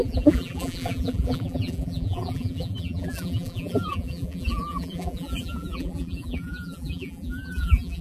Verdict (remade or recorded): remade